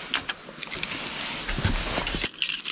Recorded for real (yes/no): yes